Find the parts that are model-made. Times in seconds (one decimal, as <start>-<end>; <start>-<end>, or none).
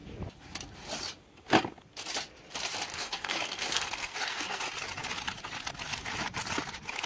2.9-4.6